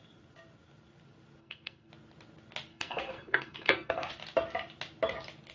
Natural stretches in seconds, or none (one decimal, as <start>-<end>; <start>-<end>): 0.0-1.4; 1.9-2.7; 4.1-5.5